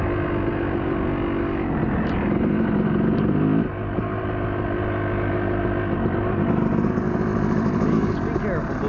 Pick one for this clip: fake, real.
real